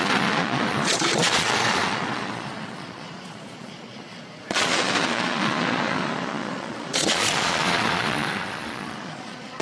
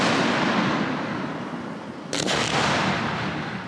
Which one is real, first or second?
second